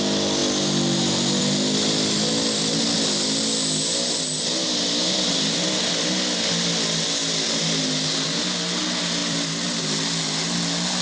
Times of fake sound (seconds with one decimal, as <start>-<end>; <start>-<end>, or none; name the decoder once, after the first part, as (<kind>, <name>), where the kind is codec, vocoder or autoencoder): 9.2-9.8 (vocoder, BigVGAN v2)